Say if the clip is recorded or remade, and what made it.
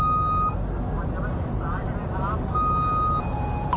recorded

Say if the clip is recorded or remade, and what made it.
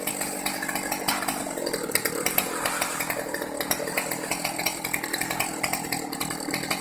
recorded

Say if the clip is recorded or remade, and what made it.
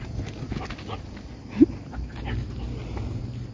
recorded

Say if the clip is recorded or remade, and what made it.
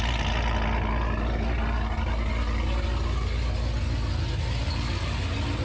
recorded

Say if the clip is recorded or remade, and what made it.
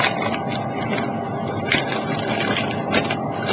recorded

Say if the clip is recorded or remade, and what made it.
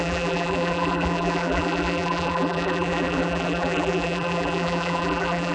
remade, vocoder, BigVGAN v2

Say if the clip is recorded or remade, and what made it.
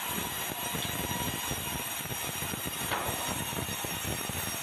recorded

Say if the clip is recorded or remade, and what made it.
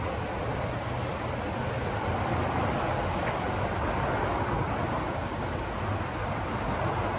recorded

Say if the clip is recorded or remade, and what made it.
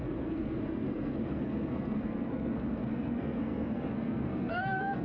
remade, codec, SNAC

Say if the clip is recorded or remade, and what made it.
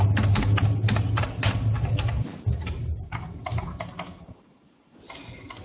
recorded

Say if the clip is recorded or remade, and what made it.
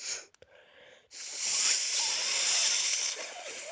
recorded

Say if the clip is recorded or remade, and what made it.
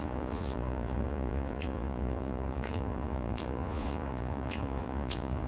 remade, vocoder, Vocos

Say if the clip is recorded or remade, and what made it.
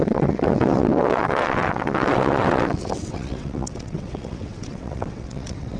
remade, vocoder, WaveNeXt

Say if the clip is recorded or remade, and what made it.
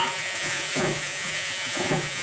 remade, vocoder, Vocos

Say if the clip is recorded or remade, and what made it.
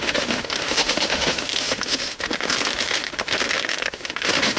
remade, autoencoder, DAC-VAE